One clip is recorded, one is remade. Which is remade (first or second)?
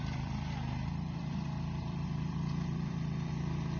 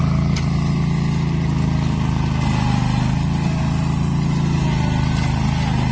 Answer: first